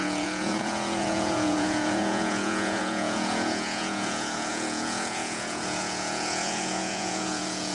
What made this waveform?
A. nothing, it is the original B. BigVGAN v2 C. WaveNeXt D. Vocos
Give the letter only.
D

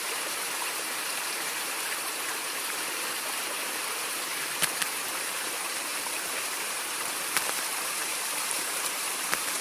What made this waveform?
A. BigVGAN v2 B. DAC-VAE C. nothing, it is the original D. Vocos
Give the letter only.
A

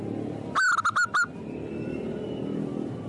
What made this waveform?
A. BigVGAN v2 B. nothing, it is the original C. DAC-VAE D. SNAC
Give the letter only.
B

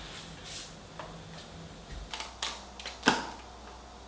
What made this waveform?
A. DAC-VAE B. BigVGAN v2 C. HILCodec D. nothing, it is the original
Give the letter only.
D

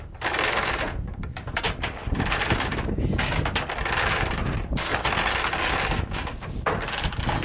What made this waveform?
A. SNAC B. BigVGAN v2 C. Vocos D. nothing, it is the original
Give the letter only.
D